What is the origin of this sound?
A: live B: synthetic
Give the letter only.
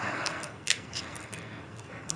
B